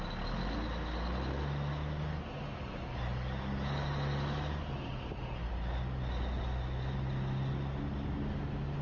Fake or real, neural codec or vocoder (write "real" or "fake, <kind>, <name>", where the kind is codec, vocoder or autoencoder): real